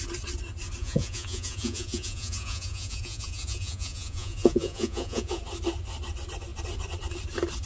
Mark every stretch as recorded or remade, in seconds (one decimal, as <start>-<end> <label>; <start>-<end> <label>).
0.0-0.8 recorded; 0.8-5.4 remade; 5.4-7.7 recorded